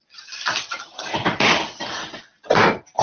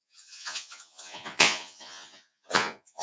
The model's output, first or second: second